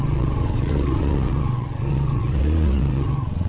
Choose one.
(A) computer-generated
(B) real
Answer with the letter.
A